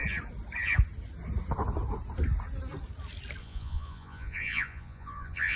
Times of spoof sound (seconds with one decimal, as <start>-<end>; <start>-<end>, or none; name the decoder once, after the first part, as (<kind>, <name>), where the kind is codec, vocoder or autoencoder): 3.4-5.6 (vocoder, Vocos)